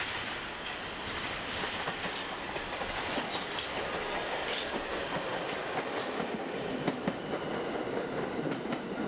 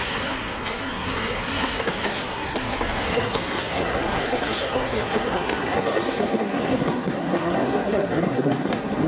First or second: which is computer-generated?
second